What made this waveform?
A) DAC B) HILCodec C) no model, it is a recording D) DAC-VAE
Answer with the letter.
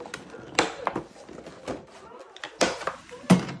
C